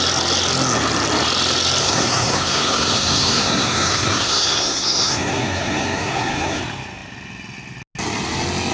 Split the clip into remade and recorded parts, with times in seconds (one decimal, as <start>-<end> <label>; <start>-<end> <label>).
0.0-1.8 recorded; 1.8-6.6 remade; 6.6-8.7 recorded